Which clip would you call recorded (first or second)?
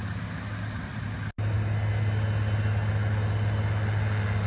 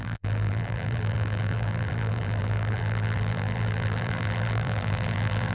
first